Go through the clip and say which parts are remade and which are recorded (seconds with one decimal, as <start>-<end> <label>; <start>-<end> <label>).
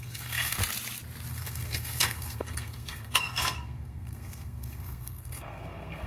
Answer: 0.0-0.6 remade; 0.6-1.3 recorded; 1.3-6.1 remade